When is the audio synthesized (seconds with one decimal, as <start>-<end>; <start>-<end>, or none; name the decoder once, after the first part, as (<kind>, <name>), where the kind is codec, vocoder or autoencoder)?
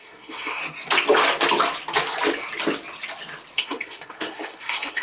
0.0-0.6 (codec, SNAC); 3.6-5.0